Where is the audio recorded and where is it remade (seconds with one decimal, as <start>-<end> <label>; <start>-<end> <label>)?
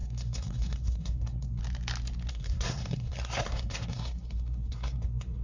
0.0-1.6 remade; 1.6-2.3 recorded; 2.3-5.4 remade